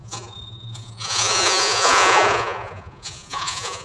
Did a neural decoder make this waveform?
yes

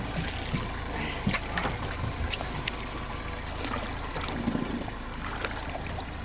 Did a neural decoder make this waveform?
no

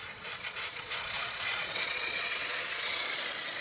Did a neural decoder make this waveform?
yes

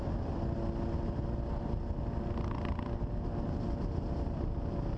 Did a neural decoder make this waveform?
no